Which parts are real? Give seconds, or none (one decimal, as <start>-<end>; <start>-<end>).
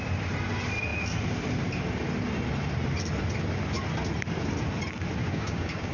0.0-5.2